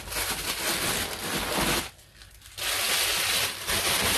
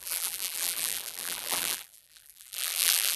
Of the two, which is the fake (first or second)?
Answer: second